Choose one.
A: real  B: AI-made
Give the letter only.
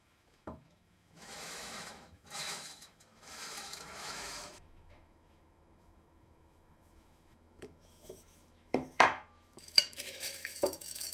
B